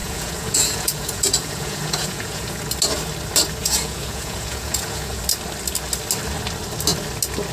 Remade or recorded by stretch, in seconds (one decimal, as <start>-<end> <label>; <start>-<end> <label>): 0.0-2.6 remade; 2.6-3.6 recorded; 3.6-5.2 remade; 5.2-7.5 recorded